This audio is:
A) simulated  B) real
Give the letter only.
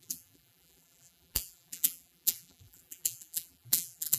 A